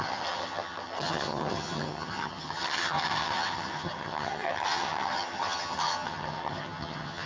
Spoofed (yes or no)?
yes